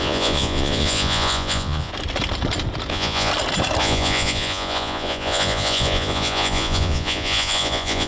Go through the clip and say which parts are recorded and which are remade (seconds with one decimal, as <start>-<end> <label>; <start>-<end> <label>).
0.0-1.9 remade; 1.9-2.9 recorded; 2.9-3.3 remade; 3.3-3.8 recorded; 3.8-8.1 remade